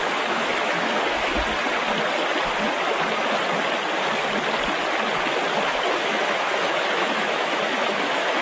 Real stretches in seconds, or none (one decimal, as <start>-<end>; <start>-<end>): 1.3-6.0